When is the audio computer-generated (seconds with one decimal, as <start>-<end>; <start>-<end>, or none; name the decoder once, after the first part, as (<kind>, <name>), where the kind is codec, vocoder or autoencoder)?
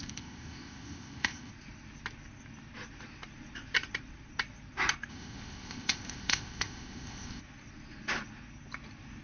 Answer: 0.0-1.5 (codec, ZipCodec); 5.1-7.4